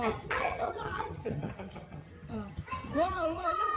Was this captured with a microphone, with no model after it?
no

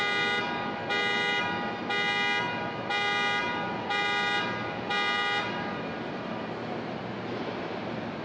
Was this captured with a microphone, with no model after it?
yes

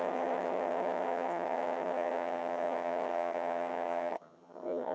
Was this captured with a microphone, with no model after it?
no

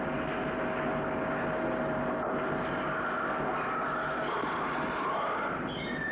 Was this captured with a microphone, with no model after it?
yes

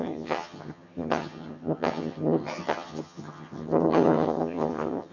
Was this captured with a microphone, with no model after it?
no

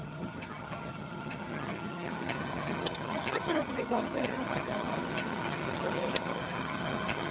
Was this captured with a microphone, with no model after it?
no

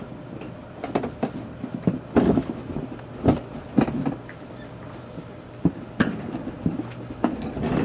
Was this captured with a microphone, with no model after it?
yes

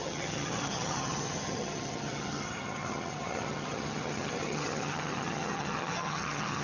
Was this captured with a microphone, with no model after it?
no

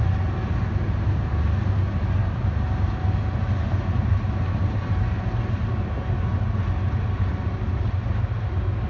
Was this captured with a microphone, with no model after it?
yes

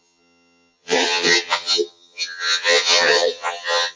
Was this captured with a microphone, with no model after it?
no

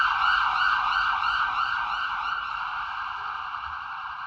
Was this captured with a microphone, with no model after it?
yes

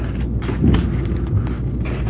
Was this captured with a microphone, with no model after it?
yes